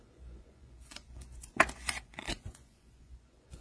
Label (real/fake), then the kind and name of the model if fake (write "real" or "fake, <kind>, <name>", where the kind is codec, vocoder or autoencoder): fake, vocoder, Vocos